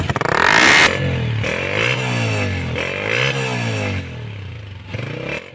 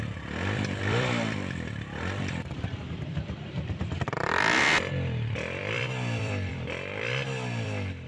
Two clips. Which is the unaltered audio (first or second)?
first